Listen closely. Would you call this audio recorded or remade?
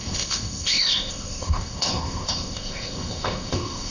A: remade